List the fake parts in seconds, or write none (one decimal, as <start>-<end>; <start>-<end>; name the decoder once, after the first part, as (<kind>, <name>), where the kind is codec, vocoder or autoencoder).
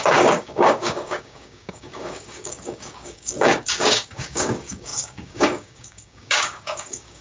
0.0-7.2 (codec, DAC)